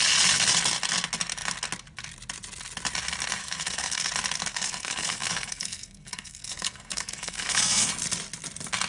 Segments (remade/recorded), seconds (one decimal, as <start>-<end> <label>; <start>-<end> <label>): 0.0-3.4 recorded; 3.4-4.1 remade; 4.1-4.5 recorded; 4.5-7.9 remade; 7.9-8.9 recorded